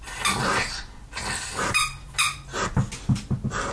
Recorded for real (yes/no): yes